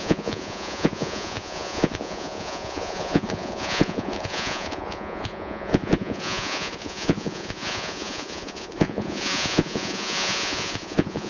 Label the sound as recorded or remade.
remade